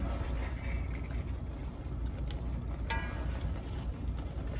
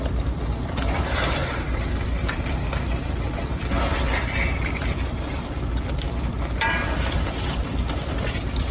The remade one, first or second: second